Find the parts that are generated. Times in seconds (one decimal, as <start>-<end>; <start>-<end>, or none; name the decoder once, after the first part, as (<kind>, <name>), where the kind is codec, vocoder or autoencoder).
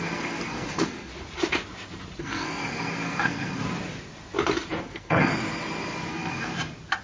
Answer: 0.0-1.1 (codec, SNAC); 2.2-3.6; 4.8-5.3; 6.1-6.5